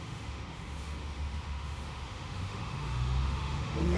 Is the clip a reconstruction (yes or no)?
yes